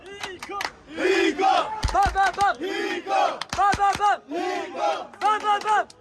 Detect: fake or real real